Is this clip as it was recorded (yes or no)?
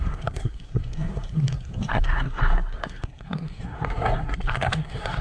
no